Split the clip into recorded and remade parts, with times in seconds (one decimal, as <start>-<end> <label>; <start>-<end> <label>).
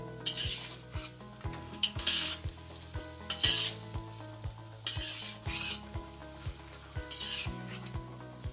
0.0-1.6 recorded; 1.6-2.3 remade; 2.3-8.5 recorded